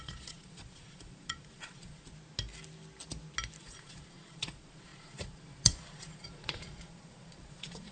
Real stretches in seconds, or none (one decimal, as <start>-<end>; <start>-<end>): 2.1-3.6